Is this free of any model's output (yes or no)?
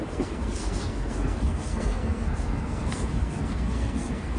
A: no